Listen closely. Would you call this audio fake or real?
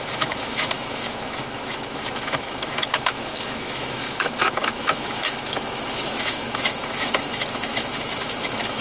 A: fake